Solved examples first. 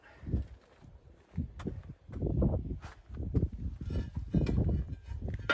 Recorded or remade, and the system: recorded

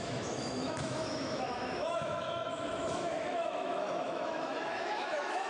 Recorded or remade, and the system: remade, autoencoder, DAC-VAE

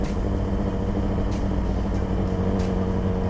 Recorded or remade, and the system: recorded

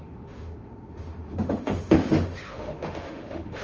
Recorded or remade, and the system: remade, autoencoder, DAC-VAE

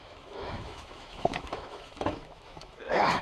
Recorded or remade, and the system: remade, autoencoder, DAC-VAE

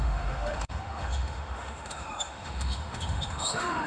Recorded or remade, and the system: remade, autoencoder, DAC-VAE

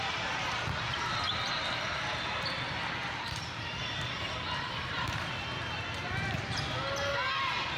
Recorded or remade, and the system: recorded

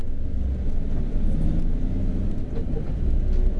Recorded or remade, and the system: recorded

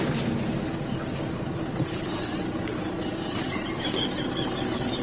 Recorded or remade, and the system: recorded